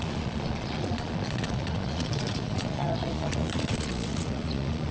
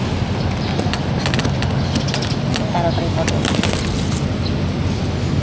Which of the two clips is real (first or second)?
second